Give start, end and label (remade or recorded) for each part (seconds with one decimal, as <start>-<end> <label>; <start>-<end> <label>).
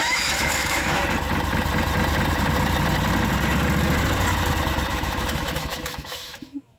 0.0-1.0 remade; 1.0-4.9 recorded; 4.9-6.8 remade